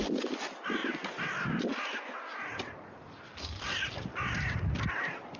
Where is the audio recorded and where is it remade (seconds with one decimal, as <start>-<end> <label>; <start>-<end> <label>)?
0.0-5.4 recorded